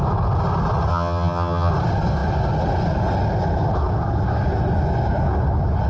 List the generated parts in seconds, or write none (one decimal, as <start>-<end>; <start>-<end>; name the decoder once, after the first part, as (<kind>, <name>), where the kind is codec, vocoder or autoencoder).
0.9-1.7 (vocoder, HiFi-GAN)